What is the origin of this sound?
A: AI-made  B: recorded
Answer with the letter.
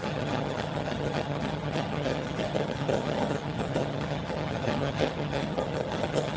A